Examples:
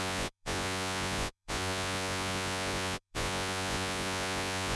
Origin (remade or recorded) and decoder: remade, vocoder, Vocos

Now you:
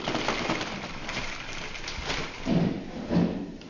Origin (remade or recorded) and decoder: recorded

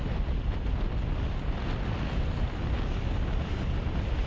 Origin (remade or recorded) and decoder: recorded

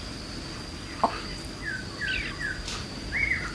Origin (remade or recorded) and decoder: recorded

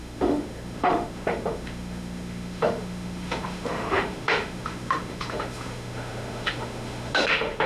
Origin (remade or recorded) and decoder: remade, autoencoder, DAC-VAE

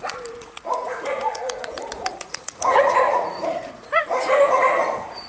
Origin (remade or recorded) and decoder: remade, vocoder, Vocos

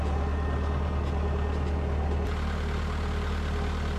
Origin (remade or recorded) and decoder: recorded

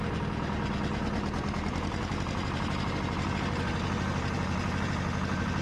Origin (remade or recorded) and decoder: recorded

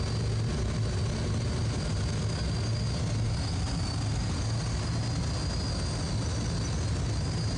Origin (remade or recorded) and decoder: recorded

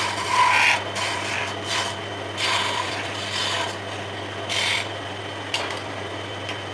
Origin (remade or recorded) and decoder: recorded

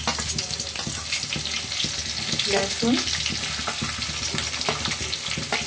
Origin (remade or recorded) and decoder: recorded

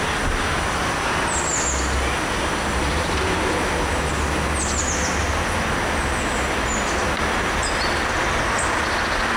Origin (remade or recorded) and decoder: recorded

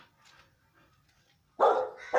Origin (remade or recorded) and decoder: recorded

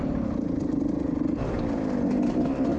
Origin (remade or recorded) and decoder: recorded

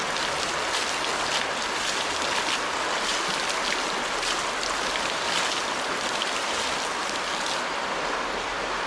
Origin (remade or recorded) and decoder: recorded